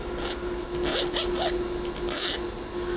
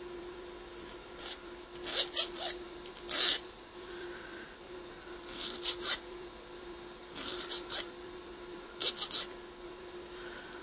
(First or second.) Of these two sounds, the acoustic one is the first